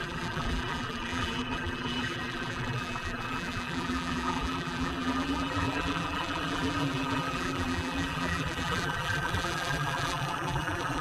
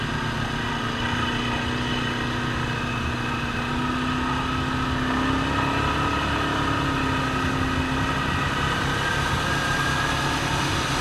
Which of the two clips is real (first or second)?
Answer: second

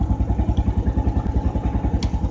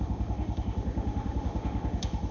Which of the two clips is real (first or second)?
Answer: first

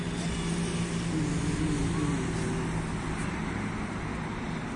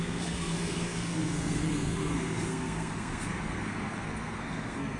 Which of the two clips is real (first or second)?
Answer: first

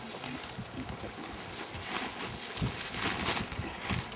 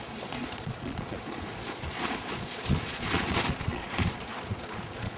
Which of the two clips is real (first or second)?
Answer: first